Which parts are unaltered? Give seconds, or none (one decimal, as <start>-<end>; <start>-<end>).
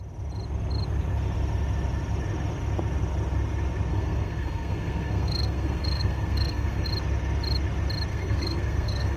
0.0-3.9; 6.9-8.1